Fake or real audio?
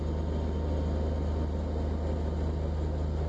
real